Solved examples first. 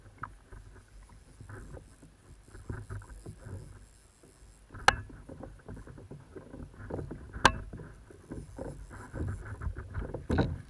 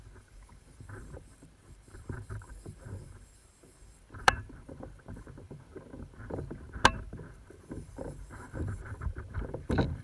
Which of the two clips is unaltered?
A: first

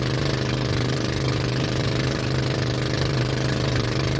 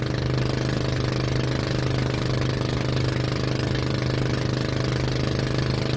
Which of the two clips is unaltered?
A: second